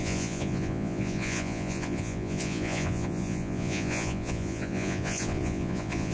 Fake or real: fake